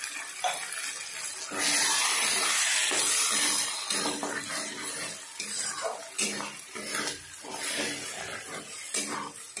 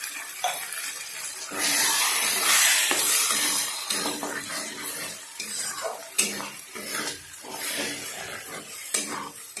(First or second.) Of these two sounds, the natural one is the first